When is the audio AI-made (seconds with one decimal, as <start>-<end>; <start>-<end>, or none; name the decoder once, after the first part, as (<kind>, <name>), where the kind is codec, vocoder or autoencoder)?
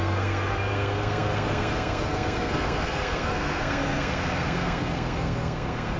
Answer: 0.0-6.0 (codec, SNAC)